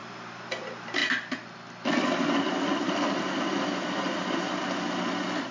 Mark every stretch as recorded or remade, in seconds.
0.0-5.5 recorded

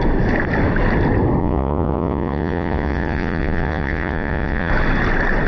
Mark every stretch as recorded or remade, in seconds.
0.0-1.4 recorded; 1.4-4.7 remade; 4.7-5.5 recorded

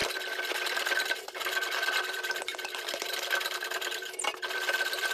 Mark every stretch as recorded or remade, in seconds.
0.0-5.1 recorded